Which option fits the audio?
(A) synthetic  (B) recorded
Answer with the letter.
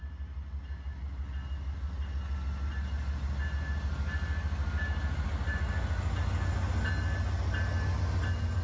B